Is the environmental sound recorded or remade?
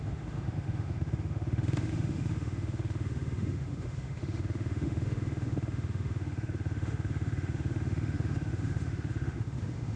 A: remade